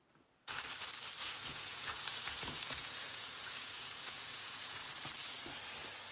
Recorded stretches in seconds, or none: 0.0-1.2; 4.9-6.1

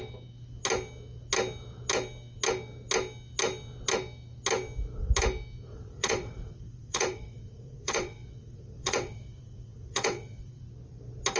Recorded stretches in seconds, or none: 0.0-5.7; 10.6-11.4

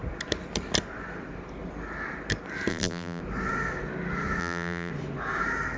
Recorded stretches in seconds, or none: 0.0-2.7; 3.2-4.4; 4.9-5.8

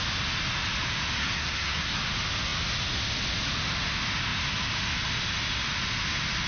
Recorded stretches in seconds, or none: 0.0-1.2; 2.0-6.5

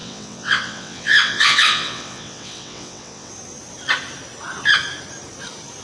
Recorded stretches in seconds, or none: 3.3-5.8

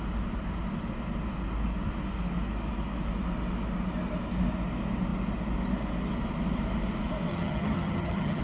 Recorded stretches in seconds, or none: 0.0-7.3

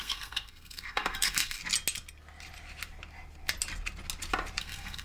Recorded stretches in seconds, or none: 1.6-4.6